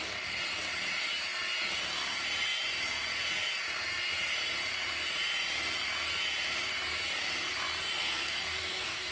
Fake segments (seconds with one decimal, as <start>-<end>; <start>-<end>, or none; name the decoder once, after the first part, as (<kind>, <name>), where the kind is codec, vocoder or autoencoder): 8.0-9.1 (codec, SNAC)